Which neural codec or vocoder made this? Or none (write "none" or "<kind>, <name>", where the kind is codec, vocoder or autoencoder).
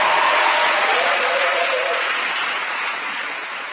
vocoder, Vocos